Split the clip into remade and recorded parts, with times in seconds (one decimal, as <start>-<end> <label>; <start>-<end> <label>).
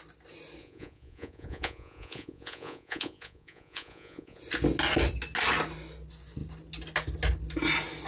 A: 0.0-0.6 recorded; 0.6-4.4 remade; 4.4-8.1 recorded